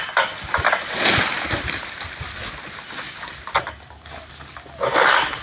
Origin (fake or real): real